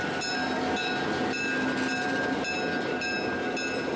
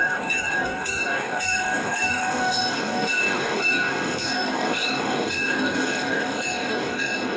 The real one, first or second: first